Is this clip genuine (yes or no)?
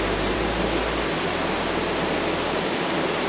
yes